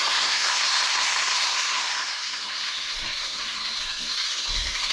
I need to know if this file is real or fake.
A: fake